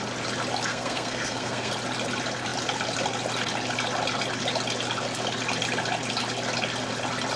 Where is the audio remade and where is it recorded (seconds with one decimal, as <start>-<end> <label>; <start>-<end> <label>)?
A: 0.0-0.7 recorded; 0.7-1.7 remade; 1.7-7.4 recorded